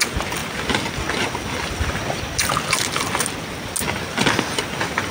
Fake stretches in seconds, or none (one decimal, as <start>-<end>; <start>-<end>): none